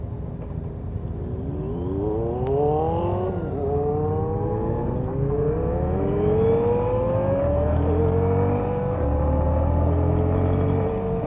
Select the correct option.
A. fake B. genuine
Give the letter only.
B